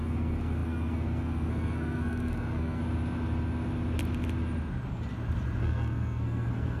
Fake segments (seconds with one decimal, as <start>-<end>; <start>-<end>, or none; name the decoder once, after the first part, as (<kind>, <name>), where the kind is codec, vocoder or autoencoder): 0.0-2.8 (codec, SNAC); 5.6-6.8